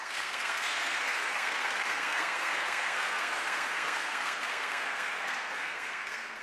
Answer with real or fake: fake